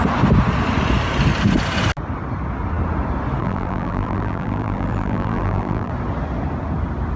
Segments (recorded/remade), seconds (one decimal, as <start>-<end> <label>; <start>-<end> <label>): 0.0-3.4 recorded; 3.4-5.9 remade; 5.9-7.2 recorded